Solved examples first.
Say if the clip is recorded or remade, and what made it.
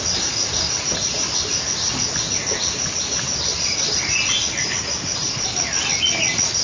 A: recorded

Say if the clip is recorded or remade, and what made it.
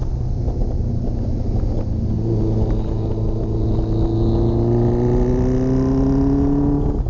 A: recorded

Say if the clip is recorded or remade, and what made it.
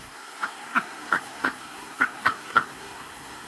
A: remade, codec, SNAC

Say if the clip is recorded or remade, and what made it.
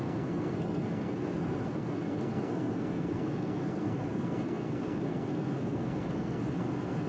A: remade, codec, SNAC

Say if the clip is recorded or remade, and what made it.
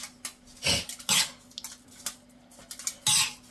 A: recorded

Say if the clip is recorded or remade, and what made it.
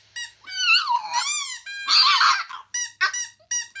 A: recorded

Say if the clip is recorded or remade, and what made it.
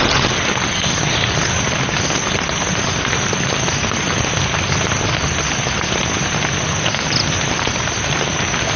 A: recorded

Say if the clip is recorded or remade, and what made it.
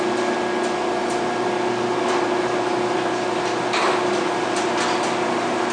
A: recorded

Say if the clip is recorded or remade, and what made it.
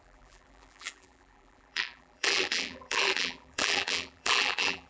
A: remade, vocoder, BigVGAN v2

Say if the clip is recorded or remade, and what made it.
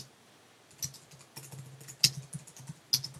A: recorded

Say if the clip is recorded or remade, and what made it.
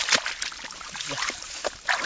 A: recorded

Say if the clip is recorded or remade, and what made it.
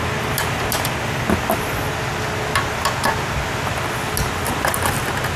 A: recorded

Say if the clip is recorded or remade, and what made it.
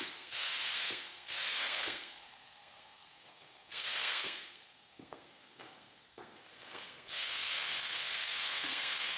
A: remade, codec, SNAC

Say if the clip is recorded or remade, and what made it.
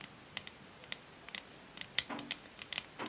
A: recorded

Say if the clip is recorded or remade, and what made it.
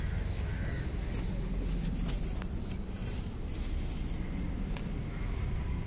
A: recorded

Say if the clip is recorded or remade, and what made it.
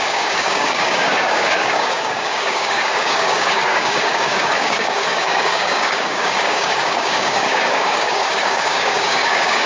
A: remade, codec, DAC